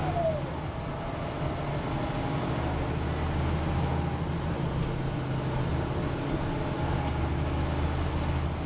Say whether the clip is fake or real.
real